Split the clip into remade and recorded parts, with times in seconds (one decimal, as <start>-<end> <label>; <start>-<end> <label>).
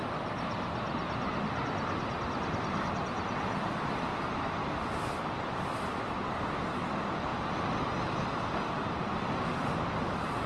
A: 0.0-10.5 recorded